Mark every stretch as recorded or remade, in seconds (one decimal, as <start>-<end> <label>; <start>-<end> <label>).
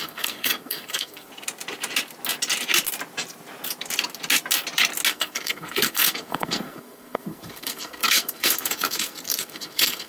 0.0-1.3 remade; 1.3-5.1 recorded; 5.1-10.1 remade